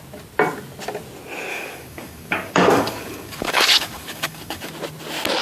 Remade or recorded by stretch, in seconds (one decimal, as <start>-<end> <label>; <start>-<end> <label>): 0.0-1.5 recorded; 1.5-4.7 remade; 4.7-5.4 recorded